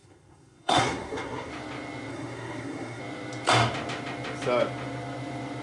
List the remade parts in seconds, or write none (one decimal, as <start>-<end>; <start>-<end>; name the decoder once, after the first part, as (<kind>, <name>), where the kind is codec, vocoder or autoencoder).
0.0-1.5 (codec, SNAC); 2.1-3.0